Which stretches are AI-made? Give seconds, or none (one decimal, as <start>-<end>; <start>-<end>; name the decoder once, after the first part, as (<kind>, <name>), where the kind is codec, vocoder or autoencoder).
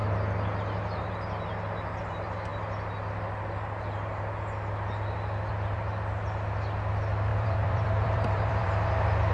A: 7.3-8.7 (vocoder, BigVGAN v2)